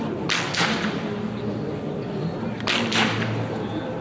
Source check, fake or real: real